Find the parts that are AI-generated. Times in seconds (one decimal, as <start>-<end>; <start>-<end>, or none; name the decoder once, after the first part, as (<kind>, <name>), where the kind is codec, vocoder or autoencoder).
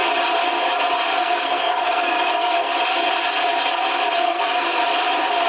1.2-2.7 (codec, SNAC); 4.2-4.8